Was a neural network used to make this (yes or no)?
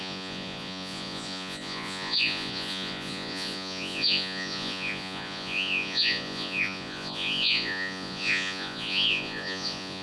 yes